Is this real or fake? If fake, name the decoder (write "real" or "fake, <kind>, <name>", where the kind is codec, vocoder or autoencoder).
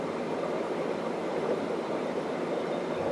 real